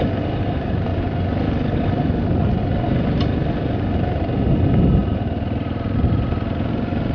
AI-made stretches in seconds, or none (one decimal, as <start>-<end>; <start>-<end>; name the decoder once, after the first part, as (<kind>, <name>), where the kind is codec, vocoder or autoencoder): none